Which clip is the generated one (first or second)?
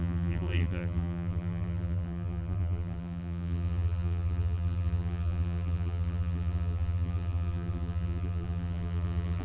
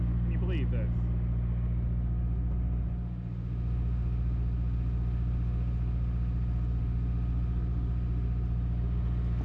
first